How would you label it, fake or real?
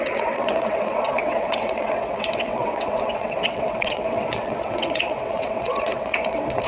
fake